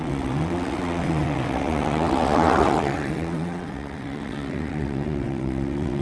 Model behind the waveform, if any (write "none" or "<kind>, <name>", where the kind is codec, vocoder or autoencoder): vocoder, WaveNeXt